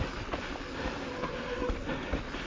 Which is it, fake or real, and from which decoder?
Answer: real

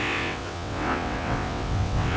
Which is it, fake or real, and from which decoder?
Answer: fake, vocoder, WaveNeXt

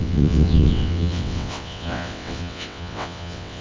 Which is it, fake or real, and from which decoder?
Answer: fake, vocoder, WaveNeXt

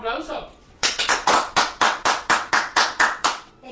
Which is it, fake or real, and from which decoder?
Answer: fake, vocoder, WaveNeXt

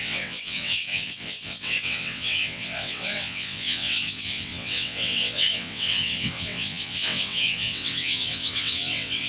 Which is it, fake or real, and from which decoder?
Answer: fake, vocoder, WaveNeXt